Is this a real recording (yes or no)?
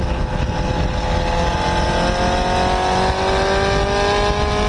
yes